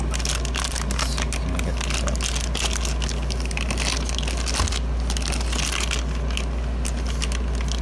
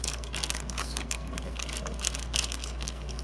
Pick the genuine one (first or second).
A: first